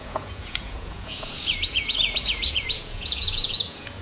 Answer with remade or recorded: remade